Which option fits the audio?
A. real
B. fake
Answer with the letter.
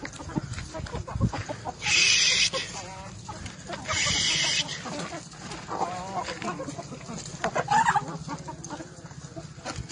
A